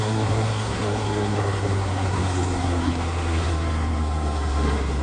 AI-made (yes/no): yes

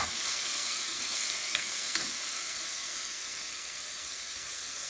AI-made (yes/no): yes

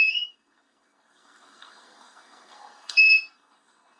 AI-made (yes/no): yes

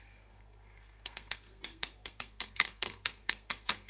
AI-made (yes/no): yes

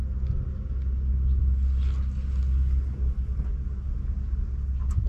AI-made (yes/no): no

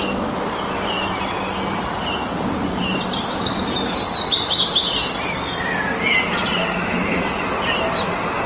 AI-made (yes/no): no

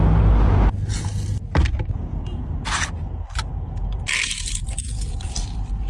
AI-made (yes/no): no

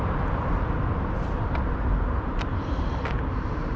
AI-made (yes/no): no